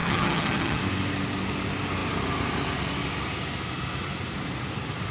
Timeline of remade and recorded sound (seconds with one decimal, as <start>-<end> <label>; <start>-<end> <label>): 0.0-0.8 remade; 0.8-5.1 recorded